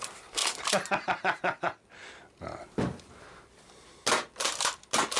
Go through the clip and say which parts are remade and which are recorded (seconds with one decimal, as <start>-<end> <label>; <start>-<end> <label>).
0.0-5.2 recorded